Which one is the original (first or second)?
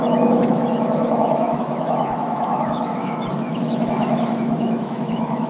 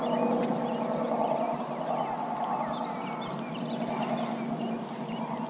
second